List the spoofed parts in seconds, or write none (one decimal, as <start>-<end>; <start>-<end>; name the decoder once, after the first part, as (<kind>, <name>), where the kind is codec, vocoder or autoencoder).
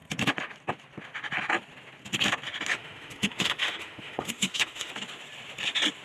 2.7-4.9 (autoencoder, DAC-VAE)